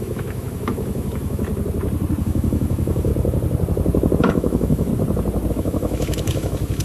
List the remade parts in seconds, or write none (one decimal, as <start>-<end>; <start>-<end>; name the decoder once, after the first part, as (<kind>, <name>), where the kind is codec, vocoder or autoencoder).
0.0-1.5 (autoencoder, DAC-VAE); 2.2-3.1; 4.2-4.9; 5.5-6.8